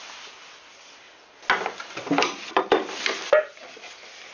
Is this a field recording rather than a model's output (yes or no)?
yes